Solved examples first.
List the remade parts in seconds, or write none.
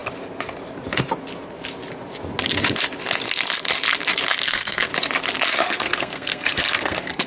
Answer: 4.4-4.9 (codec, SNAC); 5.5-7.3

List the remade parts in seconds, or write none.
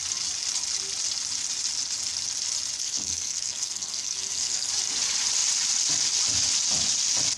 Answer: 2.8-4.7 (codec, SNAC)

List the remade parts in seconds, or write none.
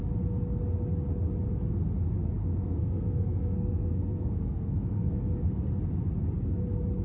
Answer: 2.4-5.8 (codec, SNAC)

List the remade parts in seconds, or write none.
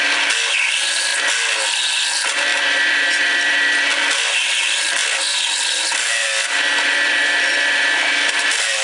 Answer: none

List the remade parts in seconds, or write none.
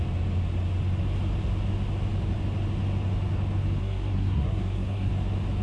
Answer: 3.8-5.1 (codec, SNAC)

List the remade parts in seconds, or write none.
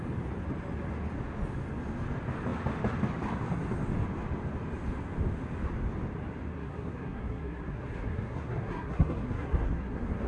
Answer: 6.5-10.3 (codec, SNAC)